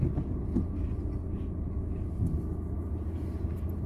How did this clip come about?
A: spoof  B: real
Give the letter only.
B